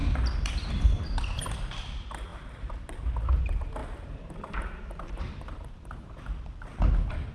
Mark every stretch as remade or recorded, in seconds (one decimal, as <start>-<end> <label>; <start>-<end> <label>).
0.0-1.2 remade; 1.2-3.8 recorded; 3.8-6.2 remade; 6.2-7.3 recorded